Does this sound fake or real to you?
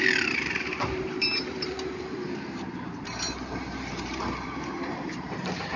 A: fake